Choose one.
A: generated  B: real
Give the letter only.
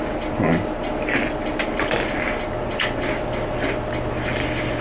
B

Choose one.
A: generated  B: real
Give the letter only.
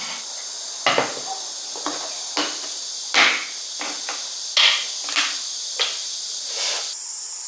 B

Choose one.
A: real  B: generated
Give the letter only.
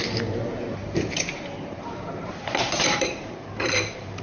B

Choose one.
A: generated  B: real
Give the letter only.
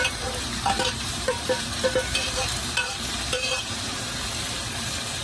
A